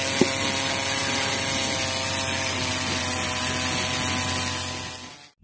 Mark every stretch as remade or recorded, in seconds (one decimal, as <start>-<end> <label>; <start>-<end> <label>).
0.0-5.4 recorded